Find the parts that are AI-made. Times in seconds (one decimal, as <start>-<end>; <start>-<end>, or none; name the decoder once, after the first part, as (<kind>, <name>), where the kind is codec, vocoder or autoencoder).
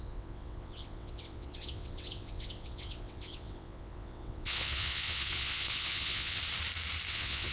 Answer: 0.0-6.4 (vocoder, WaveNeXt); 7.1-7.5